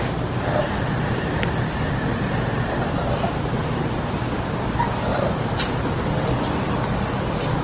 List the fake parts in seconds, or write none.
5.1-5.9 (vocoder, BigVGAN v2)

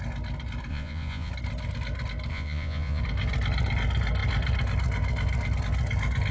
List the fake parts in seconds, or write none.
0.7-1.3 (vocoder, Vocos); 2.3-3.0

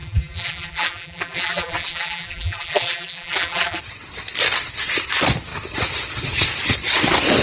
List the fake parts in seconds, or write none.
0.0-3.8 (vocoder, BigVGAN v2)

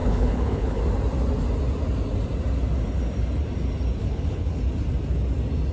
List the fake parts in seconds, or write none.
0.0-0.8 (codec, HILCodec); 4.0-4.6

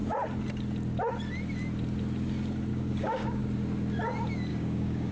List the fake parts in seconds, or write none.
2.7-3.4 (codec, DAC); 4.5-5.1

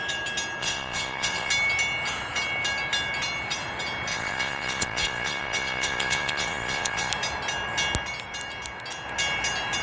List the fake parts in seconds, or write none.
0.6-1.5 (vocoder, Vocos); 4.1-7.1